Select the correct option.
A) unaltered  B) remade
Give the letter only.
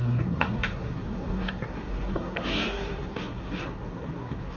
B